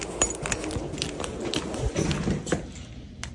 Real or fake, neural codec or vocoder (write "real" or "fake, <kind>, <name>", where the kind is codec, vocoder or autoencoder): real